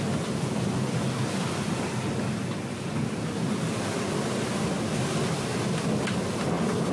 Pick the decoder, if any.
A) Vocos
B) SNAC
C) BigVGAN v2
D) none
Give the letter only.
D